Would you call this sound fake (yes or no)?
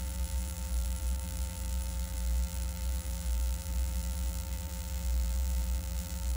yes